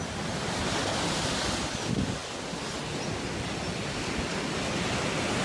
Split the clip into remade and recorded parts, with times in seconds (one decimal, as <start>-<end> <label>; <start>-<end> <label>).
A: 0.0-5.4 recorded